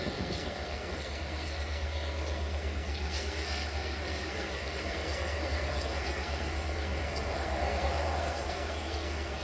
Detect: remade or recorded remade